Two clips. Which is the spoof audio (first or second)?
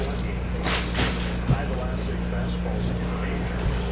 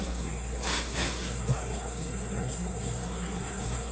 second